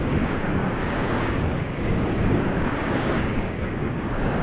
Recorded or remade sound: remade